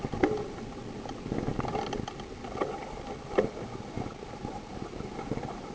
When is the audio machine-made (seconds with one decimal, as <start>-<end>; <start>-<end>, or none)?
none

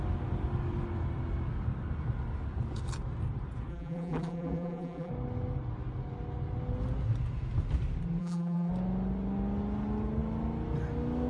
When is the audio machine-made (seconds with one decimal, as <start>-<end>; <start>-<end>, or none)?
3.7-5.1; 8.2-8.7